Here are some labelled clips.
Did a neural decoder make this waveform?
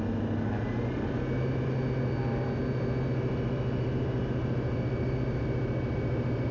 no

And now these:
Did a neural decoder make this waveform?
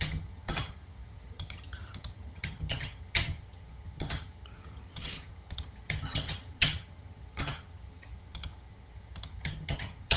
yes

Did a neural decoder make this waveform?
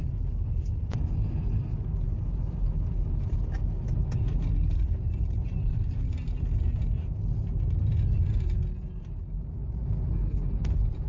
no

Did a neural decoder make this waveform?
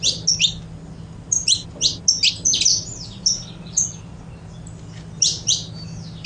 no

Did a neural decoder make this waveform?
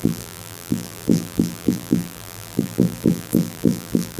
yes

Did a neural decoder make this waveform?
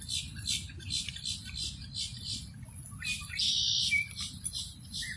no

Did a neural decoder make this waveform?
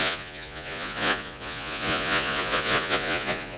yes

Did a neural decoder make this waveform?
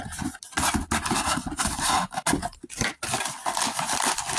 no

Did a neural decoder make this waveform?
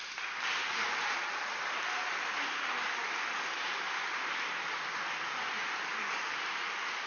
no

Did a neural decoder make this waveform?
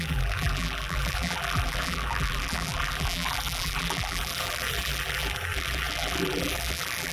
yes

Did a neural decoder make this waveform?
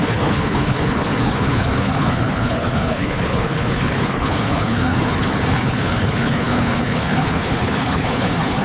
yes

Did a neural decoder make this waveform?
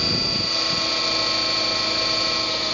no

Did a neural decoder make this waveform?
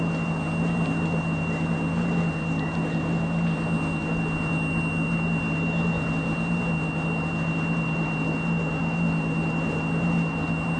no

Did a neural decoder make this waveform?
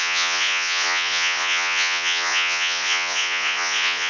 yes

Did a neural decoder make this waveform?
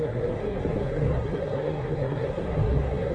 yes